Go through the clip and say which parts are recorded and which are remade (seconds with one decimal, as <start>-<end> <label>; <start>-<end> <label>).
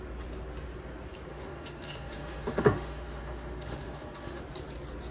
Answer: 0.0-1.3 recorded; 1.3-4.4 remade; 4.4-5.1 recorded